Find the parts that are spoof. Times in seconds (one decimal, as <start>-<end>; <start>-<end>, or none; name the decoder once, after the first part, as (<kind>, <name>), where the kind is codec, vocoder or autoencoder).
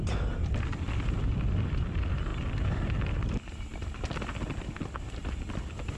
0.0-2.3 (vocoder, BigVGAN v2); 4.5-5.2